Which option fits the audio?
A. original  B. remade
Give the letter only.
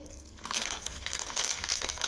B